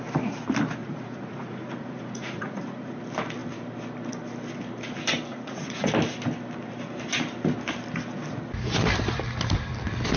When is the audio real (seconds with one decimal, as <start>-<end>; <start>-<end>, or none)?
0.0-0.8; 3.0-5.3; 5.9-10.2